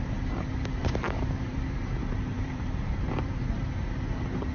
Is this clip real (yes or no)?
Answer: no